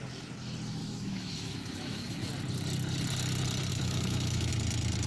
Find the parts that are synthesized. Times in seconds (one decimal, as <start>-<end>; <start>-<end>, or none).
0.8-2.3; 3.7-4.5

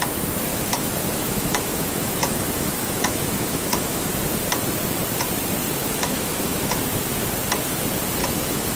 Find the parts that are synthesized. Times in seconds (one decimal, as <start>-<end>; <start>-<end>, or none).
0.5-4.1; 5.8-6.8; 8.2-8.8

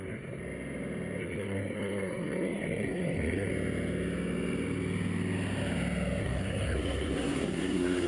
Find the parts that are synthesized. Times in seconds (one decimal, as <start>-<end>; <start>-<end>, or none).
0.0-0.4; 1.2-3.5; 6.2-8.1

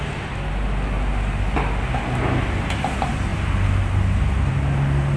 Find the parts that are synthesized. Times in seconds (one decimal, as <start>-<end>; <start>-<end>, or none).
none

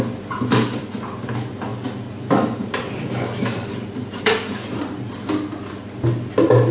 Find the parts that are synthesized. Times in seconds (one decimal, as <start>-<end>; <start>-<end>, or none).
none

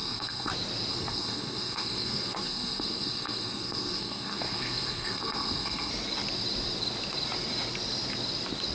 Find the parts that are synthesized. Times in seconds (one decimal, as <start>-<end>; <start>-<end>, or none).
0.0-0.5; 0.9-5.9

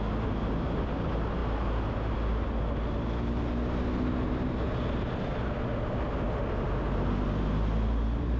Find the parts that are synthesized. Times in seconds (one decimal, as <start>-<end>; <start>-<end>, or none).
none

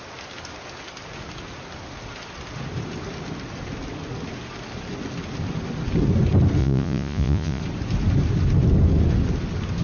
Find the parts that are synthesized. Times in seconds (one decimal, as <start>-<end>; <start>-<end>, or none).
6.6-7.6